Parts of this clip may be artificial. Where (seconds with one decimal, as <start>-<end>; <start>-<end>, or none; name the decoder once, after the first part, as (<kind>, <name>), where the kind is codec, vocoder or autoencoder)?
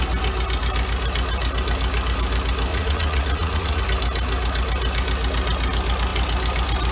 2.7-3.8 (vocoder, Vocos)